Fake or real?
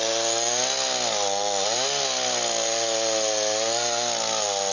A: real